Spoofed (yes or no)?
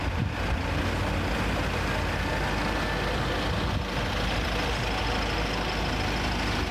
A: no